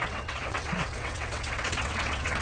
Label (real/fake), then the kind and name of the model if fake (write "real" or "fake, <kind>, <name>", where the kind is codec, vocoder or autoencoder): fake, vocoder, WaveNeXt